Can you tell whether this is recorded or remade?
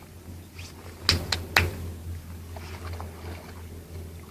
recorded